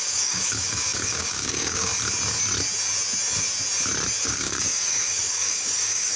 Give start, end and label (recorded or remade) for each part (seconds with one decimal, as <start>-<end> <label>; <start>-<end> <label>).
0.0-1.9 remade; 1.9-4.2 recorded; 4.2-6.2 remade

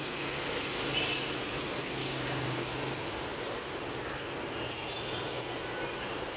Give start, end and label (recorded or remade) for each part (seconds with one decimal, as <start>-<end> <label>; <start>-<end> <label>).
0.0-2.0 recorded; 2.0-2.7 remade; 2.7-6.4 recorded

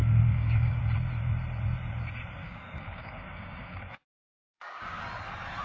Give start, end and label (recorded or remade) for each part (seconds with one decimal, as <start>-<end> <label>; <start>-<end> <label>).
0.0-0.8 remade; 0.8-2.4 recorded; 2.4-5.0 remade; 5.0-5.6 recorded

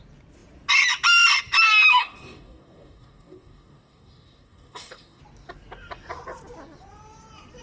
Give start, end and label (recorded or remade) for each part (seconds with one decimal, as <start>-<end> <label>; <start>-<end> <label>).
0.0-1.9 recorded; 1.9-5.2 remade; 5.2-7.6 recorded

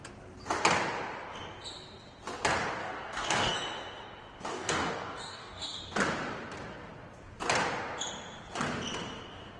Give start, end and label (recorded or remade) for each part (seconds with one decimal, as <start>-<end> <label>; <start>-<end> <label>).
0.0-2.8 recorded; 2.8-3.5 remade; 3.5-4.5 recorded; 4.5-5.8 remade; 5.8-9.6 recorded

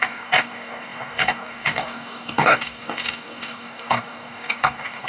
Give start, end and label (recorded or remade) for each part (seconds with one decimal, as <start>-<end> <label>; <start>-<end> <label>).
0.0-5.1 remade

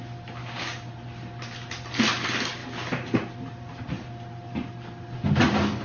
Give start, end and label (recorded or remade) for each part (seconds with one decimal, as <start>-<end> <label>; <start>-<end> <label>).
0.0-0.4 recorded; 0.4-0.9 remade; 0.9-5.8 recorded

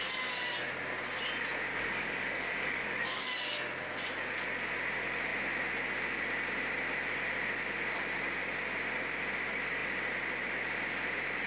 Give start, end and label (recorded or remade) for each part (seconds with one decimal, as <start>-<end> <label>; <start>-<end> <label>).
0.0-1.7 recorded; 1.7-3.3 remade; 3.3-11.5 recorded